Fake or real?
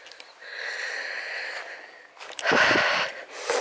real